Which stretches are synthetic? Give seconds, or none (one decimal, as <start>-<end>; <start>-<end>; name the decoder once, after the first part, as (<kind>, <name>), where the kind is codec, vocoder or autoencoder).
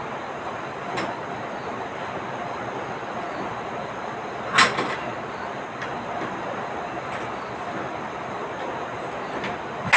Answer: none